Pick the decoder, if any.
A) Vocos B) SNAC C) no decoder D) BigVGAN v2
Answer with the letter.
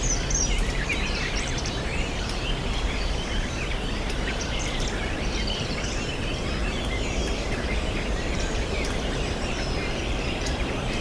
D